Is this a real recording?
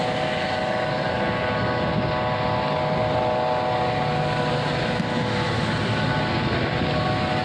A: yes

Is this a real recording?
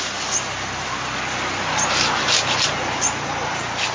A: yes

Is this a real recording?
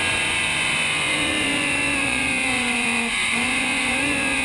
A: no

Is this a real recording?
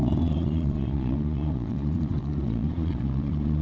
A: no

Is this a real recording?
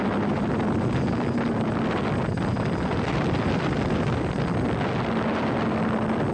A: yes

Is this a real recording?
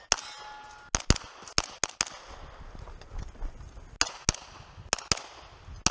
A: yes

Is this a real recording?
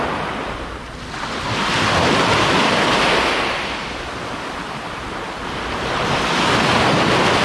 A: yes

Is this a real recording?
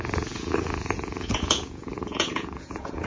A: no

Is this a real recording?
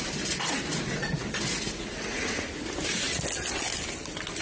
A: yes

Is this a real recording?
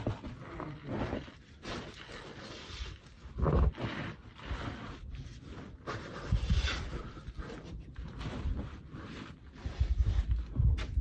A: yes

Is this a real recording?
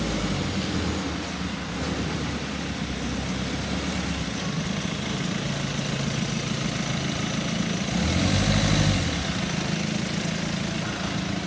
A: yes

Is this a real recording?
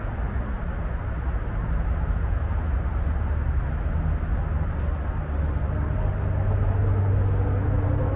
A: yes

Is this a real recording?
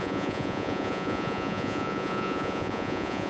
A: no